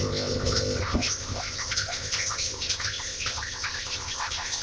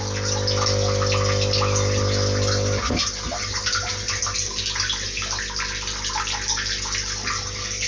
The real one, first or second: second